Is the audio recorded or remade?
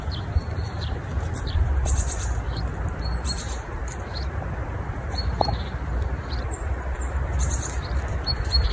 remade